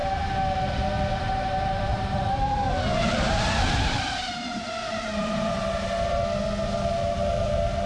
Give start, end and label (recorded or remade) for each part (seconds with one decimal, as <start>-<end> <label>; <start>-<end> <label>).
0.0-0.7 remade; 0.7-1.2 recorded; 1.2-5.6 remade; 5.6-7.9 recorded